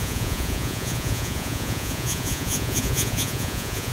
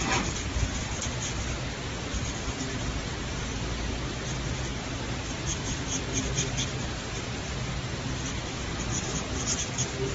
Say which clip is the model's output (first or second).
first